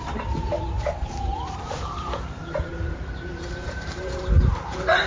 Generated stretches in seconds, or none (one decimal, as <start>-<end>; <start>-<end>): 0.0-5.1